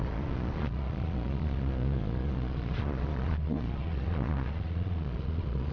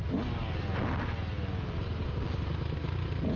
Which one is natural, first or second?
second